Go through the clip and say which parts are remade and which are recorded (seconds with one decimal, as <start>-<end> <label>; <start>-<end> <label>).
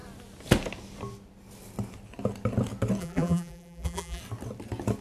0.0-3.0 recorded; 3.0-4.2 remade; 4.2-5.0 recorded